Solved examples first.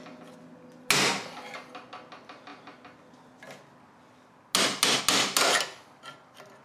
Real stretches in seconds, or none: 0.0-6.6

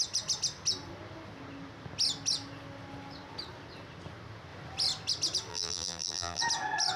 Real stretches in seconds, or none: 0.0-5.5; 6.4-7.0